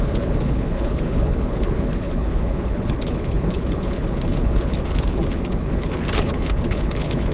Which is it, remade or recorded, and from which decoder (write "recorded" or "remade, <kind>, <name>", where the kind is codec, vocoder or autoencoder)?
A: remade, codec, HILCodec